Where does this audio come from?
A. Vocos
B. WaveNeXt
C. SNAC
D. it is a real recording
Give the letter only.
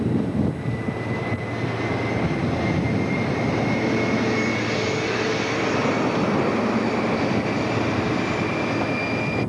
D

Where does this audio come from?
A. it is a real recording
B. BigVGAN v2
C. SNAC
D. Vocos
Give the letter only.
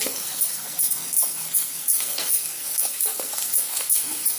C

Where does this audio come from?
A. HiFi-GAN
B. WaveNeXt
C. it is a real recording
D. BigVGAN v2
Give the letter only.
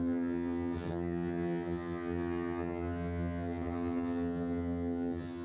A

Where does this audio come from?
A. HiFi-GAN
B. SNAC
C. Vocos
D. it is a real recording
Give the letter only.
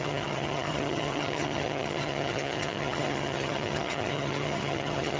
A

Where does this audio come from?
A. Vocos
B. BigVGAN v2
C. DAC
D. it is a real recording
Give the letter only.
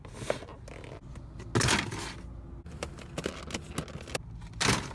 D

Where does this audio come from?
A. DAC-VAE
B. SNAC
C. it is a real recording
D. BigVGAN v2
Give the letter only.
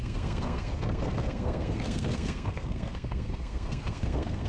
B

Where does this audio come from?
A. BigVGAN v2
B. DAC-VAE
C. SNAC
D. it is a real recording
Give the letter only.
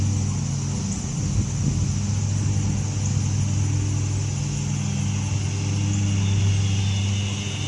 D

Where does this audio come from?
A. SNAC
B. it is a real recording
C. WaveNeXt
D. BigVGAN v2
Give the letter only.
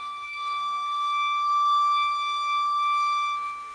A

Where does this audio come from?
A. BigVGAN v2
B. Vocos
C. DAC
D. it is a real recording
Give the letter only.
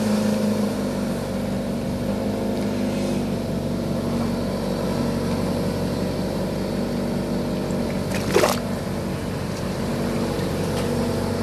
D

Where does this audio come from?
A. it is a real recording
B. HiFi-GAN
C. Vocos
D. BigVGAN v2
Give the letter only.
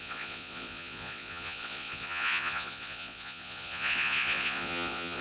C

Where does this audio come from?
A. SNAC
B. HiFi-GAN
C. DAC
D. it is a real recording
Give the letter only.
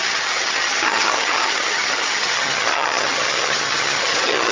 B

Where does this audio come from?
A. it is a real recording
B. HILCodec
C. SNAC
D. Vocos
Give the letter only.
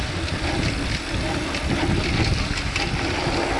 A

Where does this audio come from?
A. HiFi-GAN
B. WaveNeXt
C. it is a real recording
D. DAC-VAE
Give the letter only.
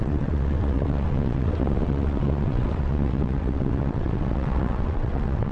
B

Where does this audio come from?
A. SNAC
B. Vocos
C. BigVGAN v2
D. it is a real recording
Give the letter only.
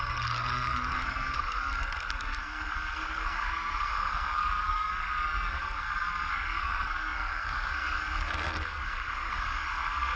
A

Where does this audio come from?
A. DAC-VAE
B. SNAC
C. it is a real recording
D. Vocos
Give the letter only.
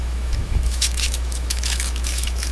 A